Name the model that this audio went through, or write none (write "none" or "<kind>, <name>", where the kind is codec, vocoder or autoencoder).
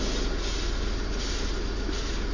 none